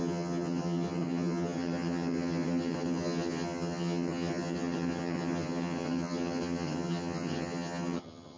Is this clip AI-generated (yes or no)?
yes